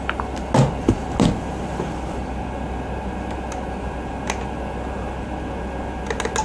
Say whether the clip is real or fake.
real